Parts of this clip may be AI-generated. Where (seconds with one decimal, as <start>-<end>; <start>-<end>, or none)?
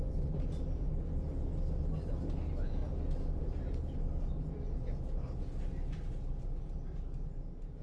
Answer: none